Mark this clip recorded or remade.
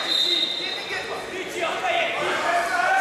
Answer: recorded